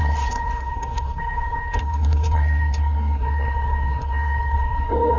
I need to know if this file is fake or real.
fake